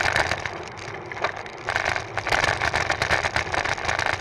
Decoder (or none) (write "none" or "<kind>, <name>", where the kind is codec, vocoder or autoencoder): none